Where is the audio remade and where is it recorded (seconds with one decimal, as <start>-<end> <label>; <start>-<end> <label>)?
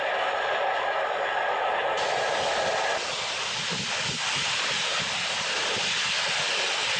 0.0-7.0 recorded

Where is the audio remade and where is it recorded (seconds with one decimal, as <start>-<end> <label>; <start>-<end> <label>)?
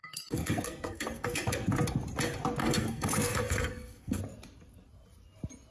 0.0-1.7 remade; 1.7-2.6 recorded; 2.6-4.2 remade; 4.2-5.7 recorded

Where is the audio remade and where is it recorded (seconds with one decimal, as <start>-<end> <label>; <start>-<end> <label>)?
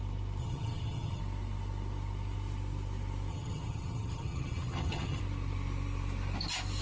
0.0-0.4 recorded; 0.4-1.2 remade; 1.2-3.3 recorded; 3.3-5.2 remade; 5.2-6.8 recorded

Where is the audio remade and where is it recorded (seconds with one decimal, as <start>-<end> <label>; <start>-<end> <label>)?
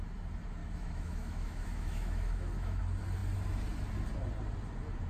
0.0-0.6 recorded; 0.6-2.8 remade; 2.8-5.1 recorded